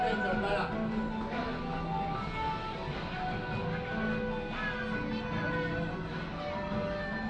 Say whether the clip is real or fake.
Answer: real